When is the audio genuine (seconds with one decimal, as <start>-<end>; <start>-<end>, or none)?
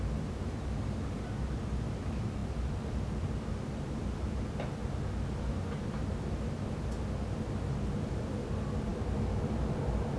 4.8-8.1; 8.9-10.2